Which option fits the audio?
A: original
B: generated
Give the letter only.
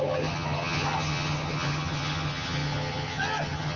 B